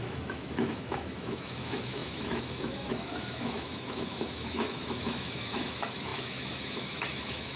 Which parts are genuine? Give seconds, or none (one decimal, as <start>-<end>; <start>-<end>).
none